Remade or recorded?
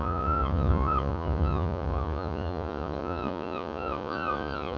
remade